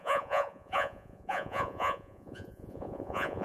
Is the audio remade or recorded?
remade